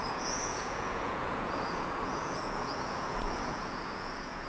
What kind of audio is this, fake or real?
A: fake